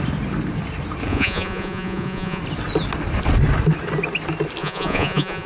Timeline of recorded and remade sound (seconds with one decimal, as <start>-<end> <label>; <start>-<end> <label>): 0.0-1.1 recorded; 1.1-2.4 remade; 2.4-4.6 recorded; 4.6-5.5 remade